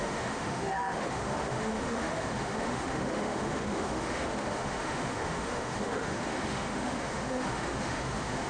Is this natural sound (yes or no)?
no